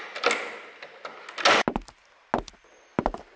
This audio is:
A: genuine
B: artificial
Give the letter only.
A